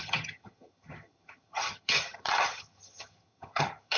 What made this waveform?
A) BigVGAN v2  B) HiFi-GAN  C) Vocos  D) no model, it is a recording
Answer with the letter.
B